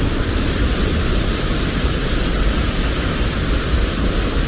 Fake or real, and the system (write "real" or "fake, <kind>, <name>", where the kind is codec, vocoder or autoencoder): real